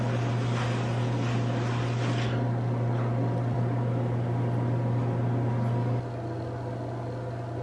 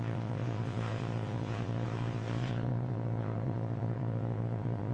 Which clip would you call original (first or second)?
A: first